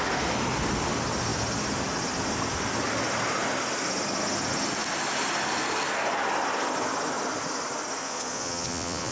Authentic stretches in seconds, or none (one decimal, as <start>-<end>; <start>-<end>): 0.0-8.0